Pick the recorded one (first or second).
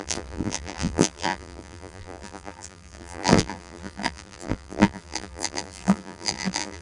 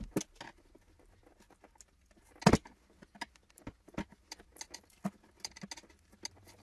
second